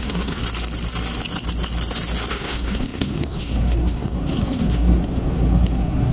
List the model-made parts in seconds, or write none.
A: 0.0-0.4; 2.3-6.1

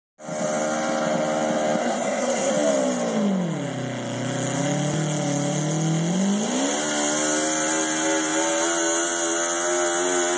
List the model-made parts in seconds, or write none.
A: 1.8-2.5

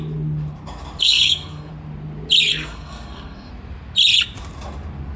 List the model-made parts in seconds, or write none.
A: 1.0-1.7; 2.5-3.5

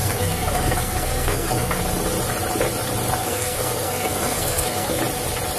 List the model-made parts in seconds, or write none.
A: 0.0-1.8; 3.2-5.0

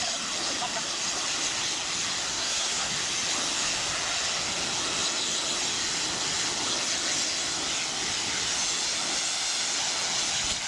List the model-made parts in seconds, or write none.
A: 2.3-2.9

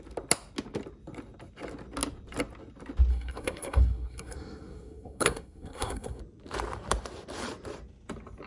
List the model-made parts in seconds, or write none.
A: 3.1-6.2

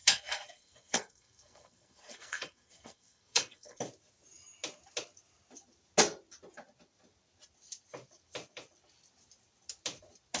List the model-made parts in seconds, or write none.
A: 0.0-3.8